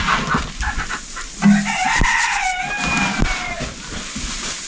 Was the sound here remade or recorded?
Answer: recorded